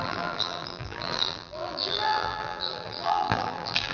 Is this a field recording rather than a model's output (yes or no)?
no